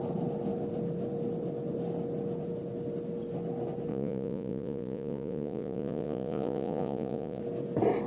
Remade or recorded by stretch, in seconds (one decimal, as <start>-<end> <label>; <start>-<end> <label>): 0.0-3.9 recorded; 3.9-7.4 remade; 7.4-8.1 recorded